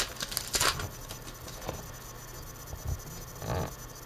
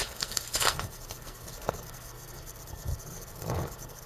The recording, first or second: first